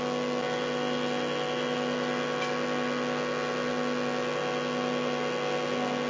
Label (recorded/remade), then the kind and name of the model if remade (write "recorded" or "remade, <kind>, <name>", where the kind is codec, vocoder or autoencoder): recorded